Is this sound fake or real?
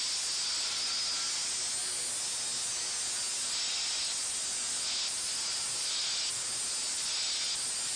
real